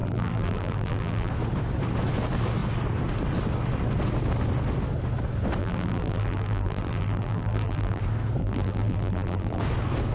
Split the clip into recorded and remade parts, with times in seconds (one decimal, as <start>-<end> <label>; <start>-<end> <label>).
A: 0.0-1.3 remade; 1.3-5.6 recorded; 5.6-8.0 remade; 8.0-8.4 recorded; 8.4-9.6 remade; 9.6-10.1 recorded